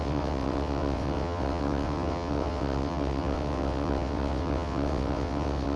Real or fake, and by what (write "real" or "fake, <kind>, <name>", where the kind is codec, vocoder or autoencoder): fake, vocoder, WaveNeXt